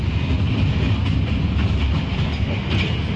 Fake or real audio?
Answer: real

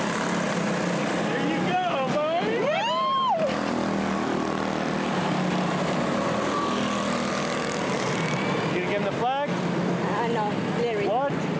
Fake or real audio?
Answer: real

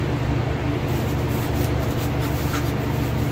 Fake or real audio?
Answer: real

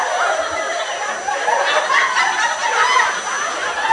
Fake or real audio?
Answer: real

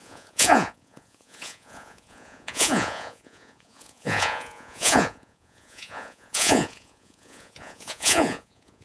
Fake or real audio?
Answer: fake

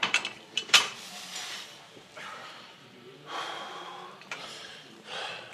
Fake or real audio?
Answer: fake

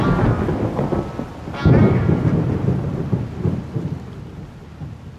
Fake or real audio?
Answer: real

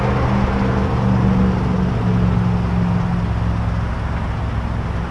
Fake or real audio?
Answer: real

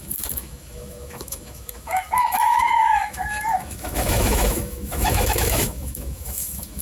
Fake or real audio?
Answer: fake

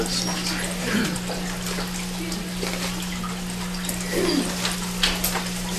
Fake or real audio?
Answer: real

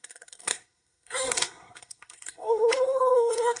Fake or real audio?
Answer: fake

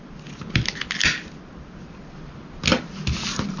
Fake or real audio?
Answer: real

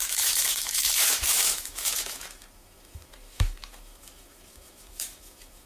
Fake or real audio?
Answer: fake